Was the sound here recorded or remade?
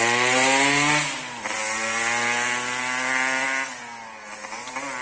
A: recorded